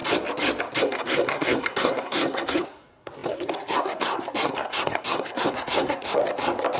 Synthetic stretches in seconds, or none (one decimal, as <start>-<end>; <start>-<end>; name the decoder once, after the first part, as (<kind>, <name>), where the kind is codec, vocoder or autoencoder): 0.8-6.2 (codec, SNAC)

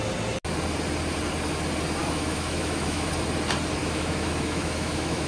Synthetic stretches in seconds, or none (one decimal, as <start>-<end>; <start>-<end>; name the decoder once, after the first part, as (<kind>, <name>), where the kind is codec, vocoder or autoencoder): 2.0-3.1 (autoencoder, DAC-VAE); 3.8-5.3

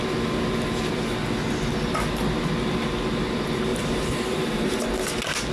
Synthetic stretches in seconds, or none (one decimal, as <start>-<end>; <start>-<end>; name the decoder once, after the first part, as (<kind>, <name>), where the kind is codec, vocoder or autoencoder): 3.7-4.9 (vocoder, BigVGAN v2)